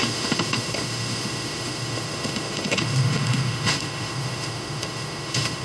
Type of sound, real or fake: fake